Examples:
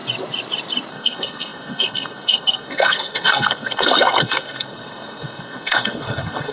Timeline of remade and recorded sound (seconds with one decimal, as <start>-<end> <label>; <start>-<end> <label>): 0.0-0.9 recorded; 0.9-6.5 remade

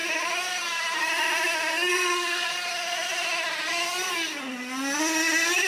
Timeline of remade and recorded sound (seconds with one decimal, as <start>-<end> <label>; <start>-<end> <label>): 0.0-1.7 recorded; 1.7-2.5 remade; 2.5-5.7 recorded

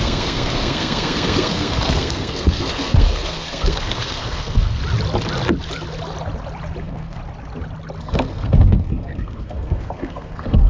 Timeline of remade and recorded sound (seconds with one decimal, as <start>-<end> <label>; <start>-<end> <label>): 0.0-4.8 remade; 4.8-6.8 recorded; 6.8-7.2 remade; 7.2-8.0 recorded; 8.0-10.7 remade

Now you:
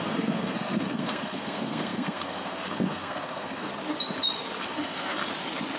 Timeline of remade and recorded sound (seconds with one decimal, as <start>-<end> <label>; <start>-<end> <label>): 0.0-3.7 remade; 3.7-4.6 recorded; 4.6-5.2 remade; 5.2-5.8 recorded

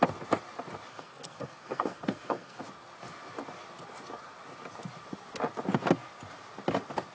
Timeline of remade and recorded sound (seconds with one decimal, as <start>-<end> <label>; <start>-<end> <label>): 0.0-0.9 recorded; 0.9-2.6 remade; 2.6-7.1 recorded

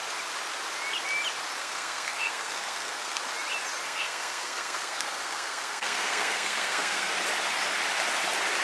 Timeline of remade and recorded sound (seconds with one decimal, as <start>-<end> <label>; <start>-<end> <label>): 0.0-1.6 recorded; 1.6-3.2 remade; 3.2-3.8 recorded; 3.8-7.1 remade; 7.1-8.6 recorded

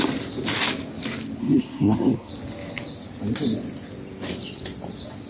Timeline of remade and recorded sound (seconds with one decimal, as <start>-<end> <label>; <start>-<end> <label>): 0.0-1.4 recorded; 1.4-2.3 remade; 2.3-5.3 recorded

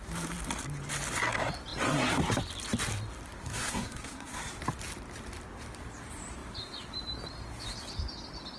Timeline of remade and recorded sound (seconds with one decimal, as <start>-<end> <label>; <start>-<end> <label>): 0.0-3.4 recorded; 3.4-4.4 remade; 4.4-8.6 recorded